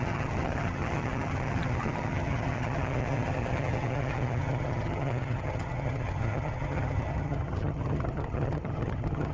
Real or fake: fake